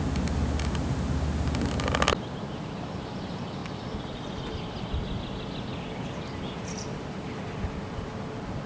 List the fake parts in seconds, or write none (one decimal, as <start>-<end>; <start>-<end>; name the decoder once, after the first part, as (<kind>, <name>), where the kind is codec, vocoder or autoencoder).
none